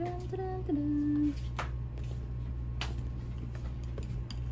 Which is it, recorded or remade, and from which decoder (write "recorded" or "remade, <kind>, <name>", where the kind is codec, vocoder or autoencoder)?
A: recorded